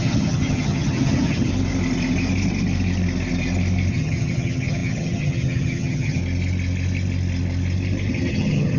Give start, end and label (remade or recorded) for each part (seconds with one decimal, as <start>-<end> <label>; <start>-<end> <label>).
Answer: 0.0-1.5 remade; 1.5-3.9 recorded; 3.9-6.2 remade; 6.2-8.3 recorded; 8.3-8.8 remade